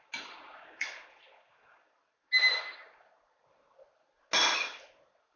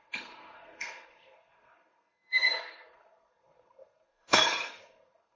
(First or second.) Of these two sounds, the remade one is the second